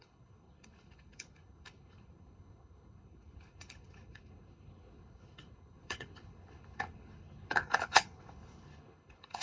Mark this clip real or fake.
fake